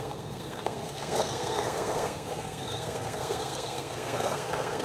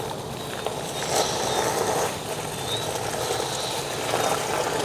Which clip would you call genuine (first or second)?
second